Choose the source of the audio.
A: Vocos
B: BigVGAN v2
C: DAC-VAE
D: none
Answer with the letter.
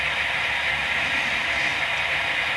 B